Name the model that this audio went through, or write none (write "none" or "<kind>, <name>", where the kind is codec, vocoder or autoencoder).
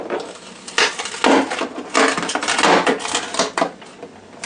none